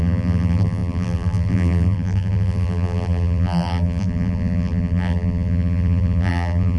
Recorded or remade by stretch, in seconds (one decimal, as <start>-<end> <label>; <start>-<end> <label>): 0.0-6.8 remade